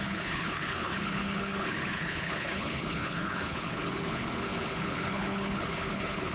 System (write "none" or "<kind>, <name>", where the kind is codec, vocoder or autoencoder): codec, HILCodec